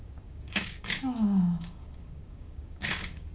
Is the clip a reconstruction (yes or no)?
yes